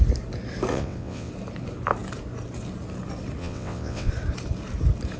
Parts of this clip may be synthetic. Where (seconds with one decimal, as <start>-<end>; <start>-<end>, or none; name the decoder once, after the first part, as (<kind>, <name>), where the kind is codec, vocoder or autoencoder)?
0.7-1.3 (vocoder, WaveNeXt); 3.4-4.1